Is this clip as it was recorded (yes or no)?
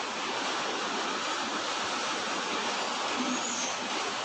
yes